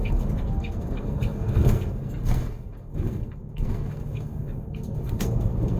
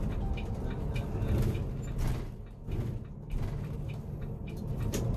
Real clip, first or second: second